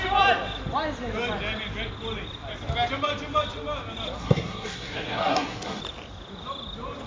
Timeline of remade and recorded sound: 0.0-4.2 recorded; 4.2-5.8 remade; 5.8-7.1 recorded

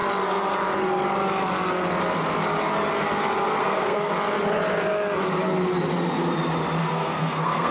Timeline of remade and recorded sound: 0.0-3.6 recorded; 3.6-4.1 remade; 4.1-6.8 recorded; 6.8-7.7 remade

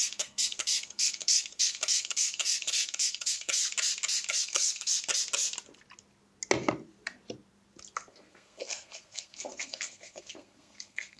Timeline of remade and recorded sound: 0.0-3.6 remade; 3.6-4.3 recorded; 4.3-4.9 remade; 4.9-8.1 recorded; 8.1-11.2 remade

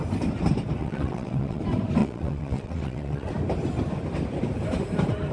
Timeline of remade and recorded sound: 0.0-0.8 recorded; 0.8-1.6 remade; 1.6-2.0 recorded; 2.0-3.3 remade; 3.3-5.3 recorded